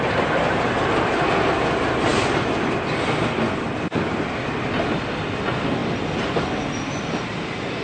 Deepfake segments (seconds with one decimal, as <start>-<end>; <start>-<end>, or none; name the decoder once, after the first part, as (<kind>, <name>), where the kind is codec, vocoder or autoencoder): none